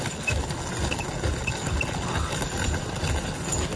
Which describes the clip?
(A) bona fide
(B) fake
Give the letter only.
A